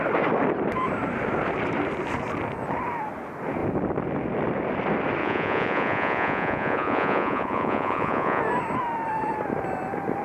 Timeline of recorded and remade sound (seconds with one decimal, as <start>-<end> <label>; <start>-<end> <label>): 0.0-5.2 recorded; 5.2-8.4 remade; 8.4-10.2 recorded